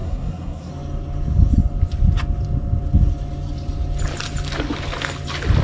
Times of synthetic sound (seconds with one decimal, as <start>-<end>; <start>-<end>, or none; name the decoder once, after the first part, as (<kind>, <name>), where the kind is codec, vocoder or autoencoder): 0.0-0.7 (codec, SNAC)